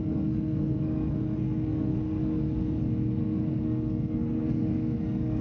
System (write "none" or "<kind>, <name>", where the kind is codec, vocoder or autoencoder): codec, SNAC